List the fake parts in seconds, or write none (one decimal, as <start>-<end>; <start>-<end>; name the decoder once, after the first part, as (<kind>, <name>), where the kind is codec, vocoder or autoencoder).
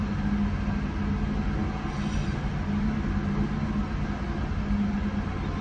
none